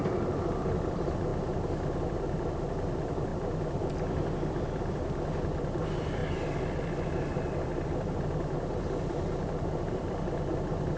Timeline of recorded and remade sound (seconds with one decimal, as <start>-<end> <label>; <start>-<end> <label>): 0.0-6.2 remade; 6.2-6.8 recorded; 6.8-11.0 remade